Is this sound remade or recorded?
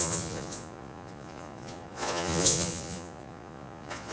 remade